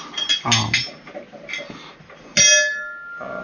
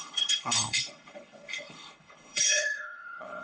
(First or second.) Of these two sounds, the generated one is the second